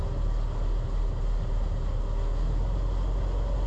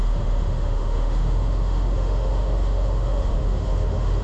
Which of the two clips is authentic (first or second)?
first